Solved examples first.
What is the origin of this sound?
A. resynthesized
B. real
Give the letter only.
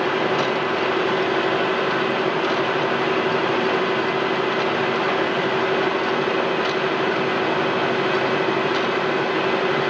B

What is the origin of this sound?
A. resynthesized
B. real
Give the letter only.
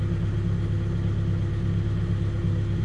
B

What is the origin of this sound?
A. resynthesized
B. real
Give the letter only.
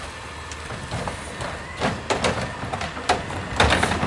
B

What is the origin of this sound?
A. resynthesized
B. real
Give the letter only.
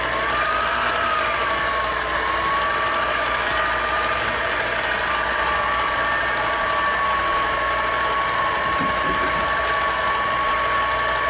B